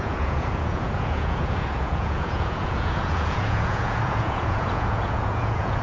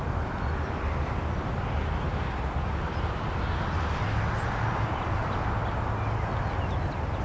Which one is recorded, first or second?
second